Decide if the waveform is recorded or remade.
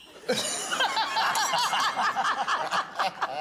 recorded